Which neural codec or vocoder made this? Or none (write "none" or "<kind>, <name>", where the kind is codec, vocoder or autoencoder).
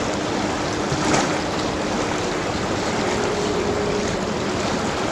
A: none